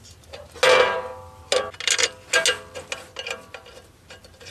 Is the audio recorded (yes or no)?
yes